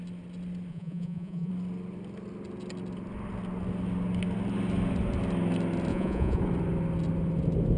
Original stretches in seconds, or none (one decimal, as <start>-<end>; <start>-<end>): 0.0-0.7; 1.5-5.9; 6.4-7.8